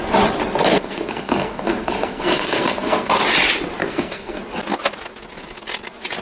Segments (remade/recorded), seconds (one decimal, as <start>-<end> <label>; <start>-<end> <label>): 0.0-0.7 recorded; 0.7-3.1 remade; 3.1-3.8 recorded; 3.8-4.4 remade; 4.4-6.2 recorded